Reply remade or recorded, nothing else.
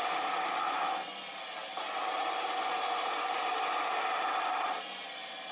recorded